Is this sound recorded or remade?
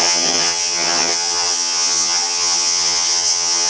remade